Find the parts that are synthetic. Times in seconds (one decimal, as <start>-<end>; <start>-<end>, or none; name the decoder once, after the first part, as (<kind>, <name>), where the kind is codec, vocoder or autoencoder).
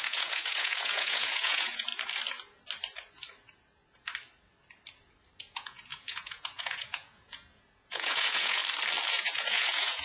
0.0-1.9 (vocoder, Vocos); 5.4-8.6; 9.1-10.0